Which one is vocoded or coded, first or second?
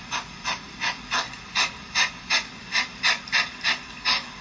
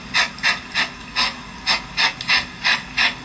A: first